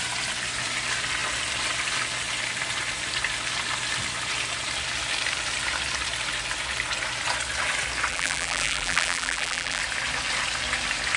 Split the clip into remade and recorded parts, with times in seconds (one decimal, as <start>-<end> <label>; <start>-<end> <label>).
0.0-8.1 recorded; 8.1-9.8 remade; 9.8-11.2 recorded